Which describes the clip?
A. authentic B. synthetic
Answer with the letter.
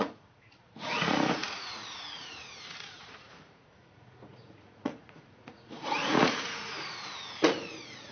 B